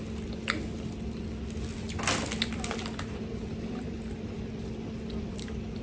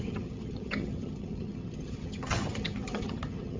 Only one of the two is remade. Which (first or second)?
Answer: second